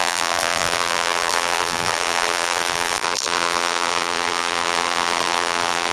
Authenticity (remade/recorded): remade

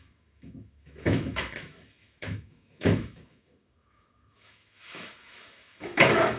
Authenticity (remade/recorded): remade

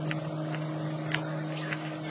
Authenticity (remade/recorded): recorded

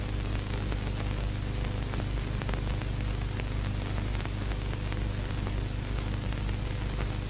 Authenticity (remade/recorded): recorded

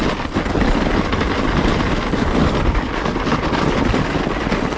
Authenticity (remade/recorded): recorded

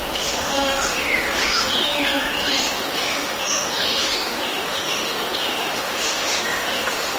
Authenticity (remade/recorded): remade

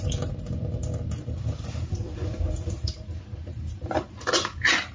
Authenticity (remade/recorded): remade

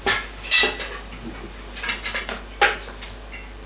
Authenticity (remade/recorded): recorded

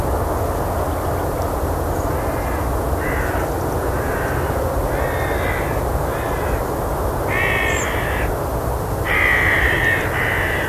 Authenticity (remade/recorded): recorded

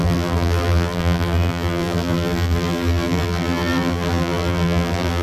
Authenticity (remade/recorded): remade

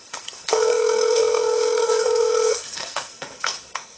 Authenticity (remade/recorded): remade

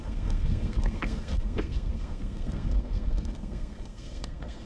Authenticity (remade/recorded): remade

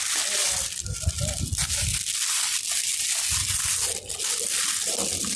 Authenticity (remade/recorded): recorded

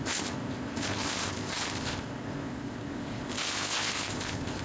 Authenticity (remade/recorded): remade